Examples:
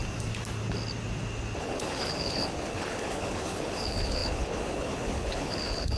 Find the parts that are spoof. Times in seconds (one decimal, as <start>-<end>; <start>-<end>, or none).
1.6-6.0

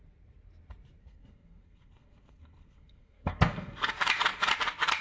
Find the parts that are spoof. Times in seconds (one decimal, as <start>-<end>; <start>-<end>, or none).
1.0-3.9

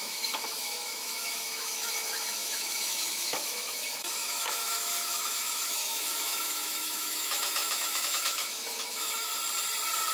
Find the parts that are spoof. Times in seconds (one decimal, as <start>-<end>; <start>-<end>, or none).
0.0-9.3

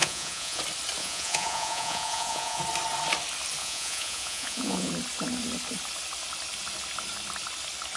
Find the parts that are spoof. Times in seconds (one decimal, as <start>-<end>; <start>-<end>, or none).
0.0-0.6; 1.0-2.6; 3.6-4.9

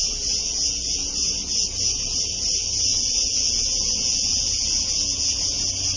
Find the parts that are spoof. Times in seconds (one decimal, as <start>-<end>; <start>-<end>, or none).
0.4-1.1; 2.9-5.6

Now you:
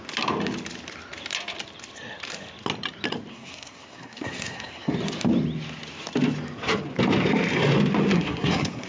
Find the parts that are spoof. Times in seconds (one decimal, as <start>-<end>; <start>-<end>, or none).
3.3-4.9; 8.1-8.9